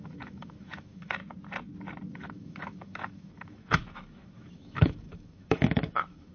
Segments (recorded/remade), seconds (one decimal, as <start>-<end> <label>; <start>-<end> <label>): 0.0-1.2 remade; 1.2-2.1 recorded; 2.1-6.3 remade